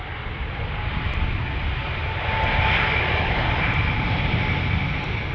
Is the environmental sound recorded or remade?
recorded